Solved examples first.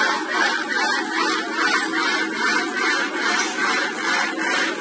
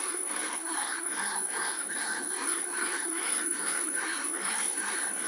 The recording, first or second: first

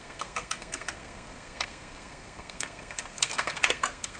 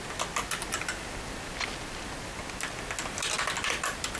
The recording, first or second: second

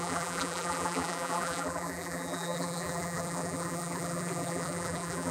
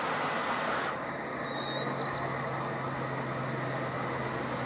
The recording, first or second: second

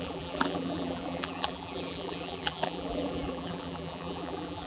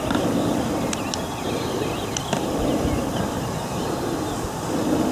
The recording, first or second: second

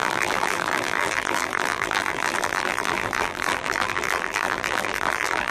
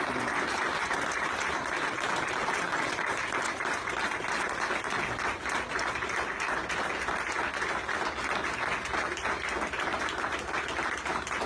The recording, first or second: second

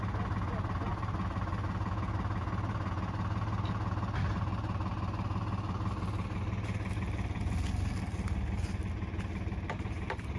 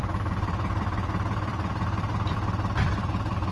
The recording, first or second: first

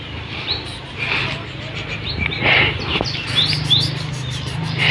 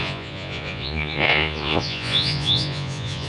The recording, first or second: first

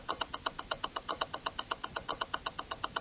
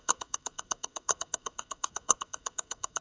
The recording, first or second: first